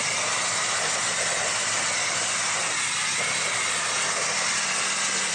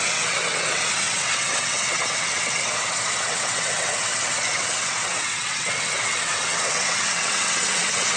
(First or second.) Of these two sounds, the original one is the first